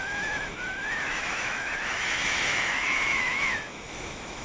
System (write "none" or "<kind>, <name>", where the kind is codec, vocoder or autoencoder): autoencoder, DAC-VAE